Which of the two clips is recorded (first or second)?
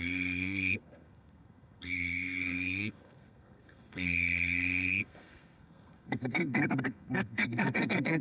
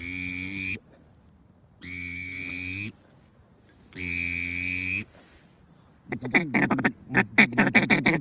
second